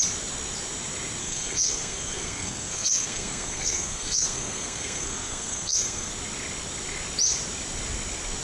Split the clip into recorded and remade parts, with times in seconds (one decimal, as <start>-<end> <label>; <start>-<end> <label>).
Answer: 0.0-1.2 recorded; 1.2-6.1 remade; 6.1-8.4 recorded